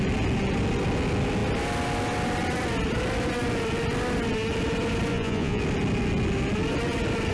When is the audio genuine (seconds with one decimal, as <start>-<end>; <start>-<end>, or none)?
0.0-5.1; 5.6-7.3